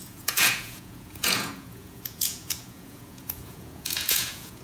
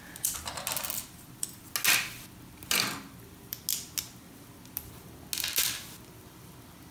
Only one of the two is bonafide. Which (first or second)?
second